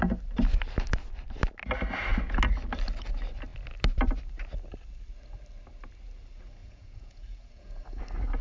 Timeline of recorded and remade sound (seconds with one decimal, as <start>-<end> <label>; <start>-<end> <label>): 0.0-6.6 recorded; 6.6-8.0 remade; 8.0-8.4 recorded